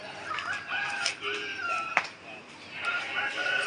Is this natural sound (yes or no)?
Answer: no